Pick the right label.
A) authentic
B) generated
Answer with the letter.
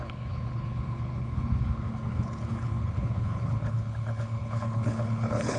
B